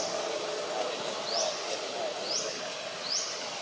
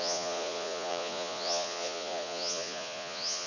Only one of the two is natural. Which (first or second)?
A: first